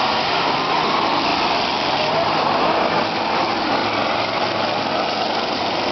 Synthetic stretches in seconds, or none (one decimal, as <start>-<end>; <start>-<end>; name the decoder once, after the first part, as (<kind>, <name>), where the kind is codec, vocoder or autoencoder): none